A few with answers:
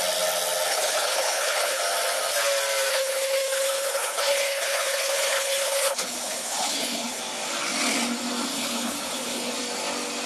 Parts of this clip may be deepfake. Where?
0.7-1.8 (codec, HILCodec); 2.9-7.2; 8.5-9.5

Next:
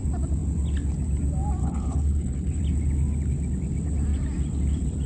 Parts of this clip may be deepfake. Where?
1.6-2.6 (codec, HILCodec)